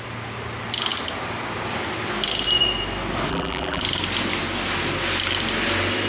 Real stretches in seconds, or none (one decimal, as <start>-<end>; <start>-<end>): 0.0-3.3; 3.8-6.1